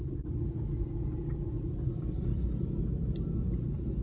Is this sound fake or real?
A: real